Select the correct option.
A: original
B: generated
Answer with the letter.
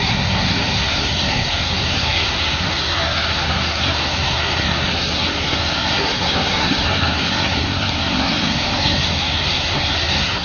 B